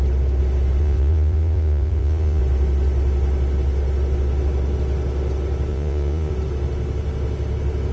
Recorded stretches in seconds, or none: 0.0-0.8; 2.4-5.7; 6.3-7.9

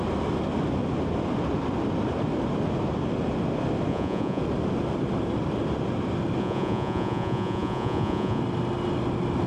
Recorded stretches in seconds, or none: 0.0-3.9; 4.4-6.4; 8.4-9.5

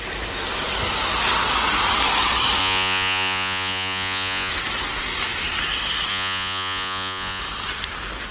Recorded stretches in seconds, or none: 0.0-2.6; 4.5-6.1; 7.4-8.3

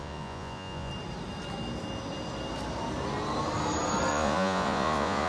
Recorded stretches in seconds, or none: 0.9-4.1